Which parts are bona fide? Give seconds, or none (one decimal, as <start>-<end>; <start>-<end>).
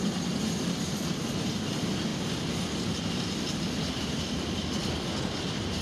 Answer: 0.0-5.8